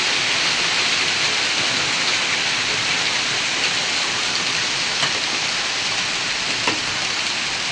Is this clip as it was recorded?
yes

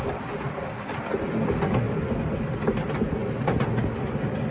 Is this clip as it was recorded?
yes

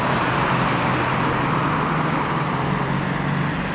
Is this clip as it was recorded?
yes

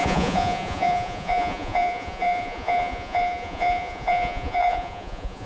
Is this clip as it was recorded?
no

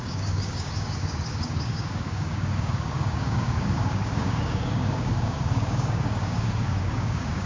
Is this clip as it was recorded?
no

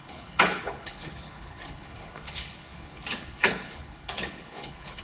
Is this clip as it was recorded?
no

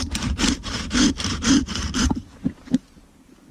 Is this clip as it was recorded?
no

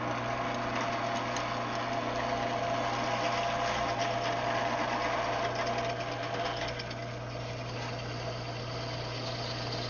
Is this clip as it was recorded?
yes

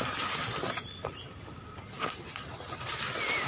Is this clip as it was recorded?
yes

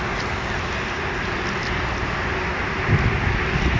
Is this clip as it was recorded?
yes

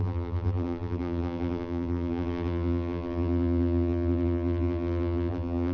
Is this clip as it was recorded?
no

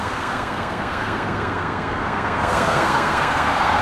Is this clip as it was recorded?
no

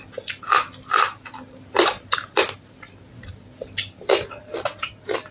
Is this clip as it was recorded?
yes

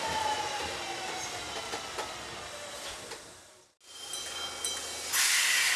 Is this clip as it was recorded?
yes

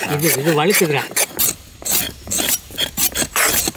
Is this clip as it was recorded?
yes